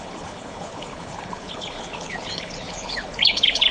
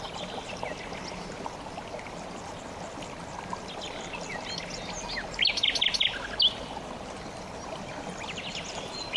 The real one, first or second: second